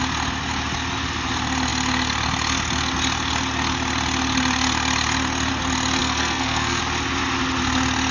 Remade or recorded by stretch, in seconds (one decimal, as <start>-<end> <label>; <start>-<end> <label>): 0.0-6.0 recorded; 6.0-6.8 remade; 6.8-8.1 recorded